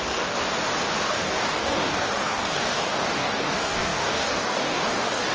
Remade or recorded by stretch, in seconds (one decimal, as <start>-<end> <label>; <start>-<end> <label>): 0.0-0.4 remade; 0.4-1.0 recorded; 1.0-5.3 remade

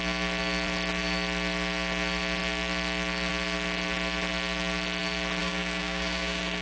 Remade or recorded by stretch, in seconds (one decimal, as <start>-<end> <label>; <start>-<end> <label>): 0.0-5.4 recorded; 5.4-6.6 remade

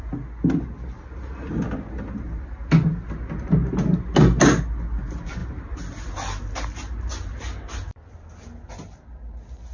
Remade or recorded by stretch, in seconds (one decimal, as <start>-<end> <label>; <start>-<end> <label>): 0.0-9.7 recorded

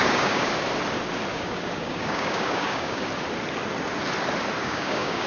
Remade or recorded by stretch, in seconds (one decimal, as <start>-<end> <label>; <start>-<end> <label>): 0.0-0.5 remade; 0.5-1.3 recorded; 1.3-3.1 remade; 3.1-4.6 recorded; 4.6-5.3 remade

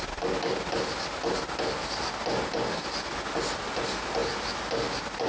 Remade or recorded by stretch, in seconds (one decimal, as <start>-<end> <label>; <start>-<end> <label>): 0.0-5.3 recorded

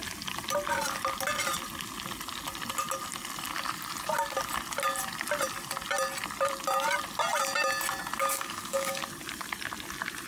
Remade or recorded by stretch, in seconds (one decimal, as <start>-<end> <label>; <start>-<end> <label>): 0.0-8.2 recorded; 8.2-9.0 remade; 9.0-10.3 recorded